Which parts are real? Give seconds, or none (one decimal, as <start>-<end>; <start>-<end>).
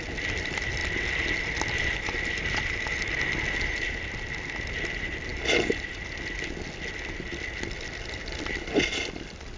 0.0-9.6